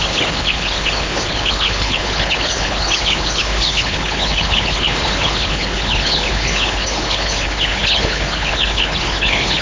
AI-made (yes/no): yes